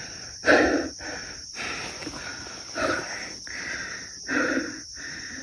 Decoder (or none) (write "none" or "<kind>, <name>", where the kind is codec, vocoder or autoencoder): none